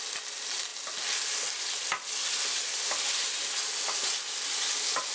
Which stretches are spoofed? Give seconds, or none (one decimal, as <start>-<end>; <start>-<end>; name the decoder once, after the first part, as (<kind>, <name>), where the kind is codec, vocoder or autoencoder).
none